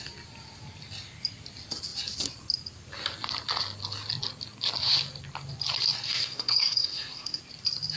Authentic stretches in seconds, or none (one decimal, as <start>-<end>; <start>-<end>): 0.0-6.1; 7.4-8.0